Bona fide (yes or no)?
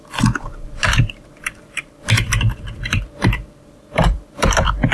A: no